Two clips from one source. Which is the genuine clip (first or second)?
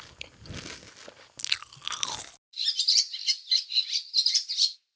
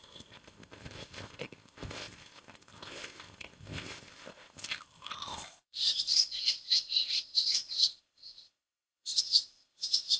first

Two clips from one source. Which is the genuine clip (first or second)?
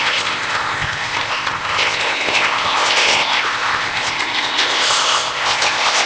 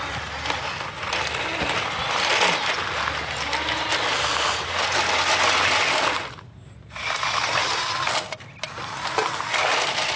second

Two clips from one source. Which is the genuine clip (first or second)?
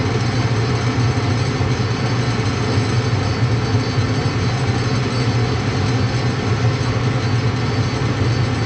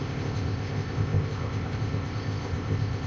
first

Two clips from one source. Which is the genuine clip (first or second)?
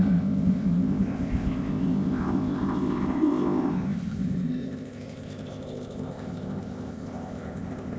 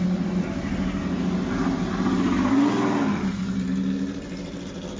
second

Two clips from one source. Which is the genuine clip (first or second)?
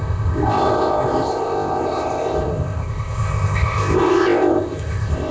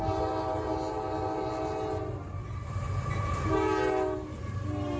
second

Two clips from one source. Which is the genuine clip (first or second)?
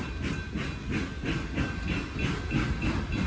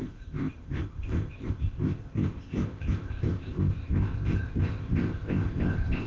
first